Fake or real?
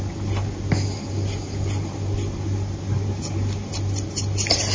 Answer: real